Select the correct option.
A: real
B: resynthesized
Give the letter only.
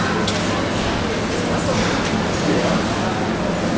A